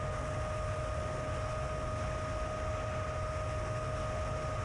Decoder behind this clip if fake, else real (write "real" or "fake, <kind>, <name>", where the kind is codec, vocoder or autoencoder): real